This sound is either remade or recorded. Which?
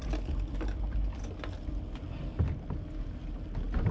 recorded